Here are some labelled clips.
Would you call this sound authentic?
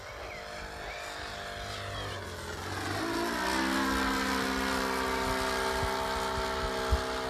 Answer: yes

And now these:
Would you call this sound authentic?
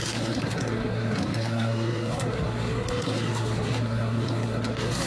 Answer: no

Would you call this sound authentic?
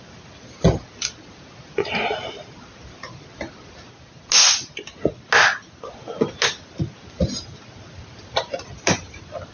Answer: yes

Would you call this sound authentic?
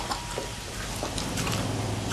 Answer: yes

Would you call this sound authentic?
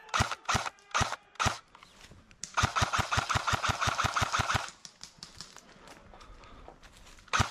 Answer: yes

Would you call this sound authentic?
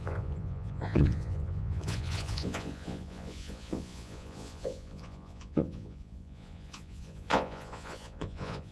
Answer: no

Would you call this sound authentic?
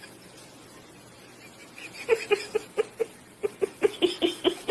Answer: yes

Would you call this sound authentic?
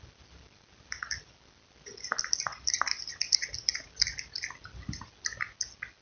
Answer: yes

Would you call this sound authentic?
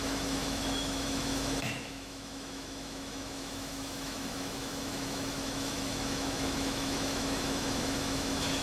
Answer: no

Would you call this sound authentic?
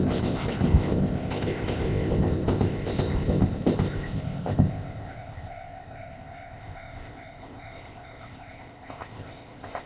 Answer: no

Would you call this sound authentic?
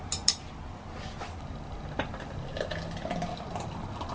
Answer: yes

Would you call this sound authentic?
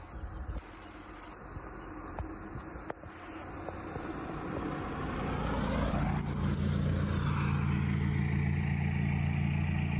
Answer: yes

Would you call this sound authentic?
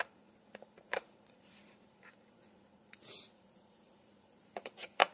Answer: no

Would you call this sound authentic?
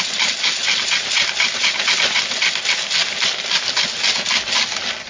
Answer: yes